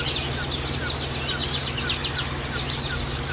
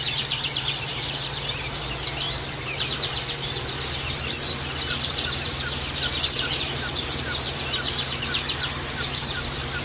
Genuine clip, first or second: first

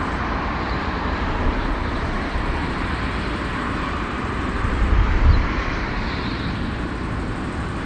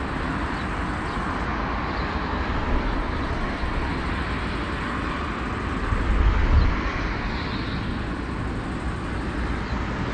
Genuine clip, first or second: second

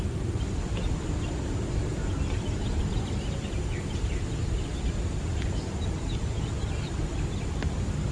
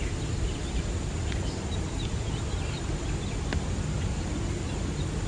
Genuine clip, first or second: second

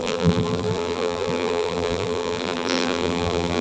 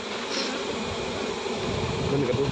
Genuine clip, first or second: second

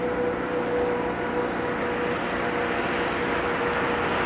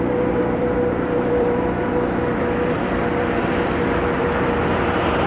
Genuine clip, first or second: first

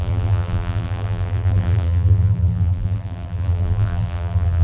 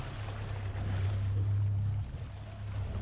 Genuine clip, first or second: second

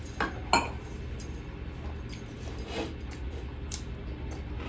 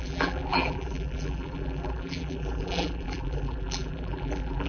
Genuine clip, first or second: first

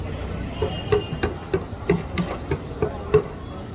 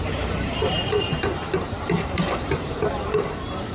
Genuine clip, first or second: first